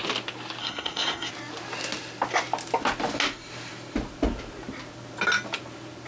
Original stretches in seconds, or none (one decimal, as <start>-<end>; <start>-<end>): 0.0-0.6; 1.3-6.1